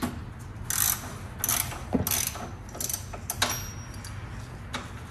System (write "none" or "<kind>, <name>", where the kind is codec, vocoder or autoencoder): none